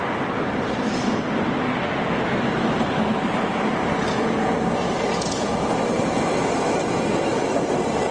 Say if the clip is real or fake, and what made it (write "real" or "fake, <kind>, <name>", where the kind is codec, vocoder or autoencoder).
real